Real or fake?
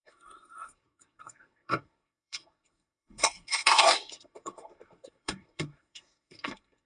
fake